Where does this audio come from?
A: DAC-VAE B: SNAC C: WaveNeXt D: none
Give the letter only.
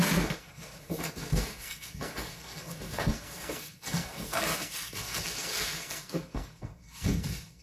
B